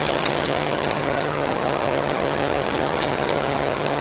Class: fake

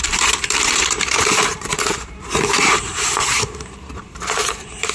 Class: fake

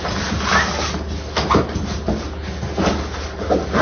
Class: real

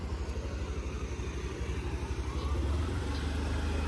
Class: real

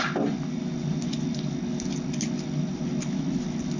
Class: real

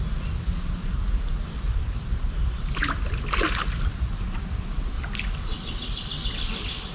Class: real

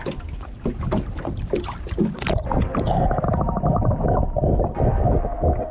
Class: real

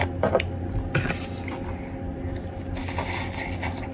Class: real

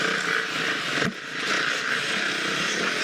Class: real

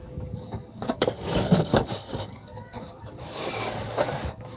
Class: fake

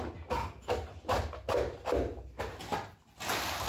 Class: real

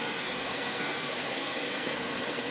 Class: fake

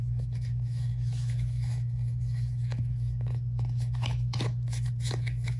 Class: fake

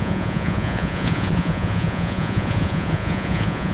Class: fake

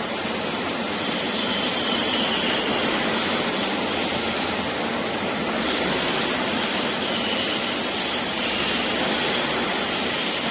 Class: fake